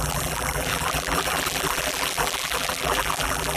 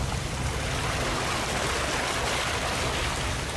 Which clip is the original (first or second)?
second